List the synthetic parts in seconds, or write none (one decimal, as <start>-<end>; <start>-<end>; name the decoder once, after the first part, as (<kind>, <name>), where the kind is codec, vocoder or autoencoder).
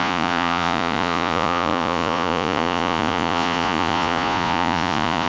0.0-5.3 (vocoder, Vocos)